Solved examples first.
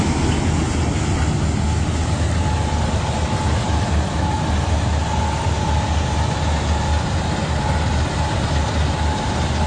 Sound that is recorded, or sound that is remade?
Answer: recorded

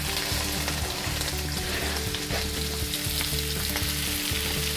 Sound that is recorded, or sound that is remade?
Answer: recorded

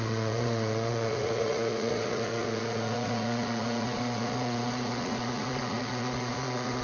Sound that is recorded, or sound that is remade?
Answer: remade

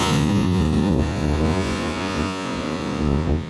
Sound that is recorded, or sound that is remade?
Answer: remade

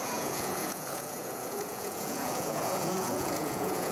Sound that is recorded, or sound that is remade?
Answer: remade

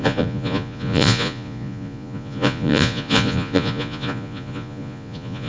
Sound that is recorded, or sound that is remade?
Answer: remade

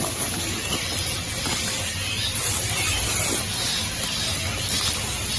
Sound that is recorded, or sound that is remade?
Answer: recorded